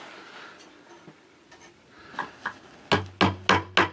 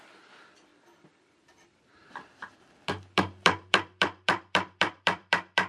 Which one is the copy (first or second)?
second